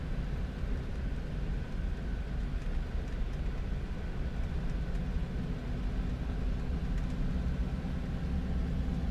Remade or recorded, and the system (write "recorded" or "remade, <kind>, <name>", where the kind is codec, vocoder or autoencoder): recorded